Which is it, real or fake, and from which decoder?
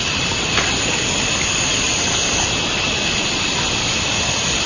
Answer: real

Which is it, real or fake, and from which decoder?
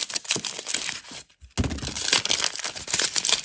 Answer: real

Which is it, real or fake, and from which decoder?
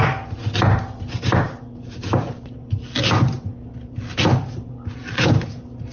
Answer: real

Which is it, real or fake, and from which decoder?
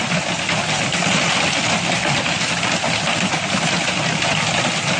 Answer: real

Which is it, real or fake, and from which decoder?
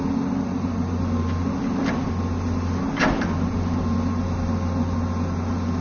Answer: real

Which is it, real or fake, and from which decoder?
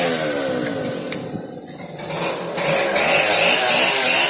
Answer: real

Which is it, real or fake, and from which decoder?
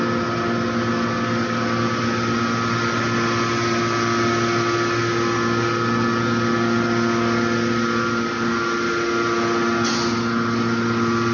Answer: real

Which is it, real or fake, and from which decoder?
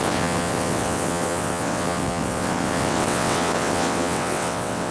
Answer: fake, vocoder, WaveNeXt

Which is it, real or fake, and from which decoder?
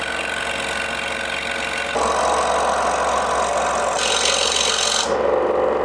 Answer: real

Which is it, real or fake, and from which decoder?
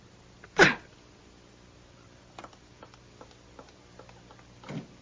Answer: real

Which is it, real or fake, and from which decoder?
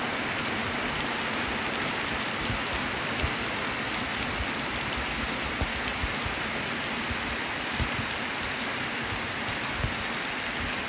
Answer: real